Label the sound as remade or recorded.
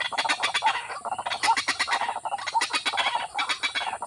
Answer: recorded